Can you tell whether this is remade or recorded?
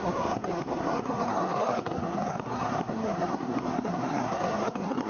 remade